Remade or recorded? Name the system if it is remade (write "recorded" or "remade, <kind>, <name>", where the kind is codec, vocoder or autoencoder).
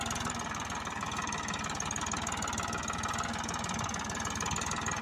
recorded